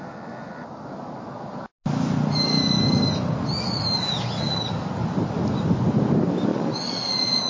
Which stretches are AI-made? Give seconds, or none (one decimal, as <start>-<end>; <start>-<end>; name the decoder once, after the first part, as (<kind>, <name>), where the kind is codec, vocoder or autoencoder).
6.5-7.5 (vocoder, Vocos)